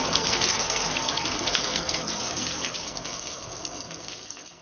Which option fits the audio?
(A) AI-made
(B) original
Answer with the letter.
A